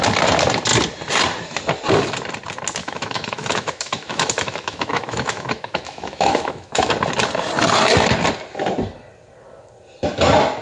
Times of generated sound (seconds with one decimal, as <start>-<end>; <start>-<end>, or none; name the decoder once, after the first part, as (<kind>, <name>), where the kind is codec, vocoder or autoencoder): 2.8-6.9 (autoencoder, DAC-VAE)